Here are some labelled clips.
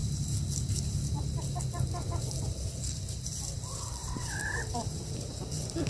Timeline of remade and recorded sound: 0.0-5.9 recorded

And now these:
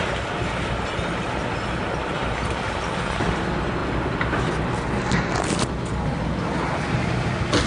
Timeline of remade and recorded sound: 0.0-7.7 recorded

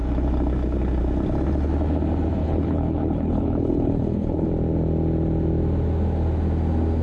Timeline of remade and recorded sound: 0.0-2.4 recorded; 2.4-4.5 remade; 4.5-7.0 recorded